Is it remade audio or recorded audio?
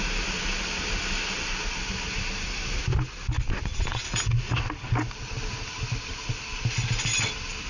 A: recorded